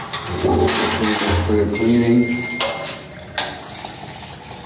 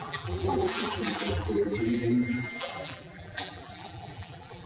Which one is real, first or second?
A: first